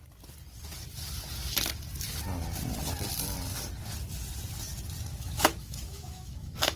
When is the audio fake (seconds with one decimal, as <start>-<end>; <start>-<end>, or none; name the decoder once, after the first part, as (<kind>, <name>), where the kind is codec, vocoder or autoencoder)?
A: 5.1-6.8 (autoencoder, DAC-VAE)